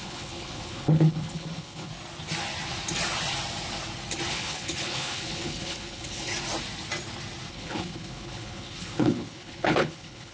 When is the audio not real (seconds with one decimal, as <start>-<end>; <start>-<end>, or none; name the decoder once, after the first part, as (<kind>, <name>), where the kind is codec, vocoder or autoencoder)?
0.0-1.9 (codec, HILCodec); 4.3-6.3; 7.5-10.3